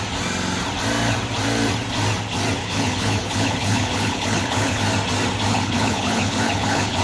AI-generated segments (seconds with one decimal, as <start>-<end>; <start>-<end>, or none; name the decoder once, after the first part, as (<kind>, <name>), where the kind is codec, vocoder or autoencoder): 2.6-4.8 (codec, HILCodec); 5.5-7.0